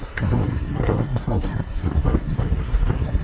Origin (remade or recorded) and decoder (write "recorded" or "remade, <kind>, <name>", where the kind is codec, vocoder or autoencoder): remade, codec, SNAC